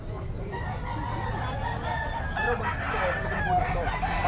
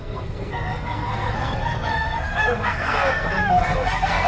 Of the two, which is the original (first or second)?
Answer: first